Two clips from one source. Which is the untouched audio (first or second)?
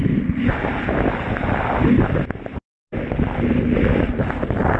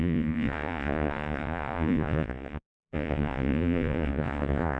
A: first